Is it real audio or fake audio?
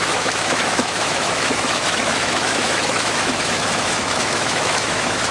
fake